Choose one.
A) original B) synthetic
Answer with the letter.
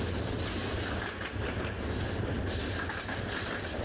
A